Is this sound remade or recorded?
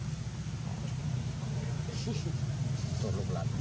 recorded